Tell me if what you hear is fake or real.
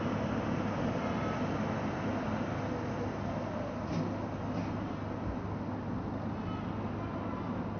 real